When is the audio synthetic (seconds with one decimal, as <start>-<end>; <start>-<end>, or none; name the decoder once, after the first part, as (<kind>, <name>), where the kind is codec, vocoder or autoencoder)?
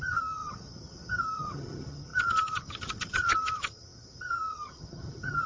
0.0-5.5 (vocoder, HiFi-GAN)